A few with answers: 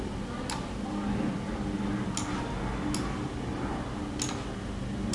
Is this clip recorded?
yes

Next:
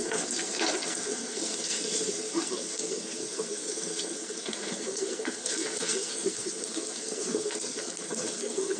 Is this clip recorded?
no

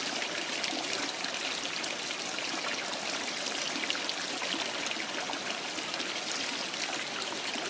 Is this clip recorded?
yes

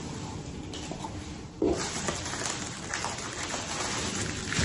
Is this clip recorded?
yes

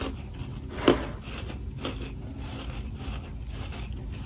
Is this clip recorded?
yes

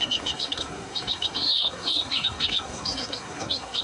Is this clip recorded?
no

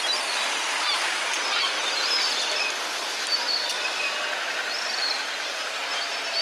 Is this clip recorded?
yes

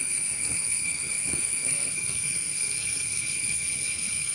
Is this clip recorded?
no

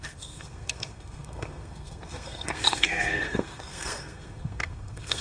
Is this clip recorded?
no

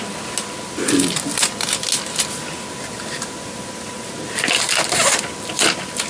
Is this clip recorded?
yes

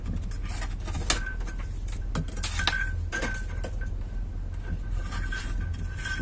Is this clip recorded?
yes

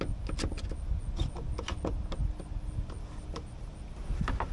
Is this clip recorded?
yes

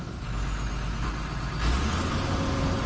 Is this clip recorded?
yes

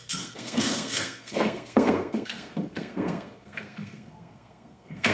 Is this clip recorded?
no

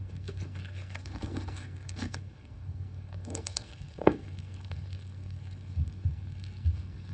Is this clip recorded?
no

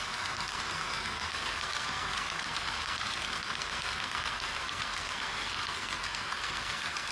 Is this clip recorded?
no